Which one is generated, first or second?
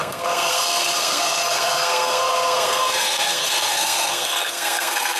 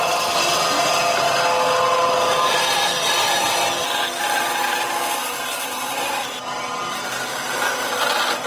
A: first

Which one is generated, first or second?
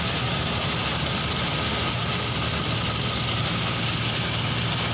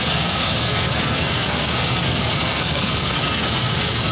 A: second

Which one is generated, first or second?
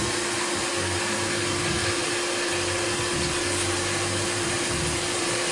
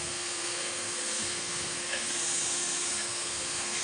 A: second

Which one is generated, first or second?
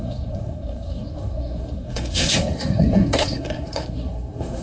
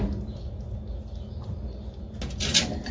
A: first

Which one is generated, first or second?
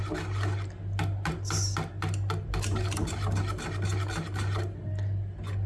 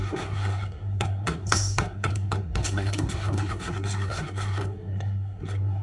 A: second